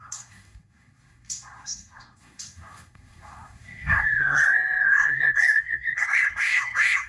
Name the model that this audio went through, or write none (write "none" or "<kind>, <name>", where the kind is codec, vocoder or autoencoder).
codec, SNAC